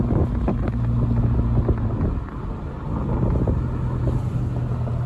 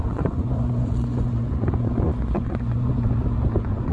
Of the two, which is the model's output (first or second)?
second